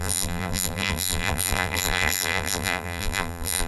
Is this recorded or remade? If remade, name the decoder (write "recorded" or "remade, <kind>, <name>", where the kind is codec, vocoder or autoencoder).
remade, vocoder, BigVGAN v2